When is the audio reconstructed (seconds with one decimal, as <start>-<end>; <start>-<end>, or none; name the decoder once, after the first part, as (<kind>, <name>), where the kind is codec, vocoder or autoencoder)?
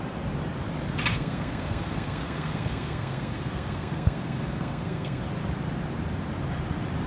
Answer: 1.1-5.2 (codec, SNAC)